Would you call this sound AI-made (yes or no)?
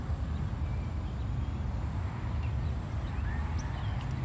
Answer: no